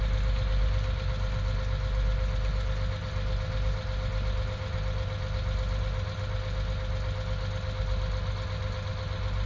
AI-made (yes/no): no